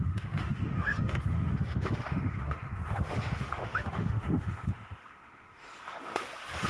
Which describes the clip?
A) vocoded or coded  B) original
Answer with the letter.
A